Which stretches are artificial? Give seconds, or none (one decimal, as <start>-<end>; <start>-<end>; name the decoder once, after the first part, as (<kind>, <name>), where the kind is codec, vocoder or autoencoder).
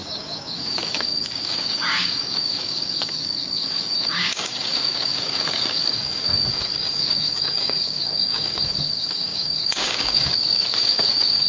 0.0-11.5 (codec, DAC)